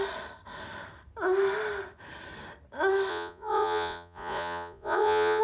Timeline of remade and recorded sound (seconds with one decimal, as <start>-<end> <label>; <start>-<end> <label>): 0.0-3.1 recorded; 3.1-5.4 remade